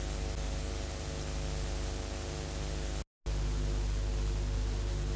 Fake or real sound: real